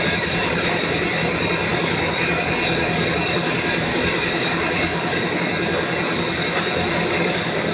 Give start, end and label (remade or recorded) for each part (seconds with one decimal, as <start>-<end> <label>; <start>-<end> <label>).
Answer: 0.0-7.7 remade

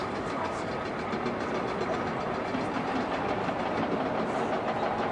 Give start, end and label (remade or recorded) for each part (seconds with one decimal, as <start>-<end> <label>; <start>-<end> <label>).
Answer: 0.0-0.7 remade; 0.7-5.1 recorded

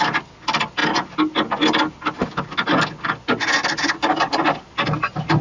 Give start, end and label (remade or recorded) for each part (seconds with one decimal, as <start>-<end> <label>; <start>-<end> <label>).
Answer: 0.0-5.4 recorded

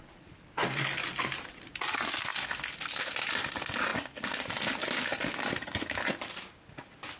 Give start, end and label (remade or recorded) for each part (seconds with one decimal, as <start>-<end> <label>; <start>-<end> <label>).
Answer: 0.0-7.2 recorded

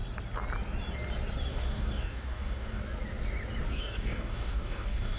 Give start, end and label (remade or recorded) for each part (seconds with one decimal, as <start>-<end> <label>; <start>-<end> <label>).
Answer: 0.0-1.5 recorded; 1.5-2.8 remade; 2.8-3.7 recorded; 3.7-5.2 remade

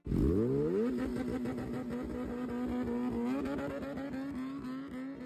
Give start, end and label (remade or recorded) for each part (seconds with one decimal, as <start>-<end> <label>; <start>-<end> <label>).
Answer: 0.0-5.3 recorded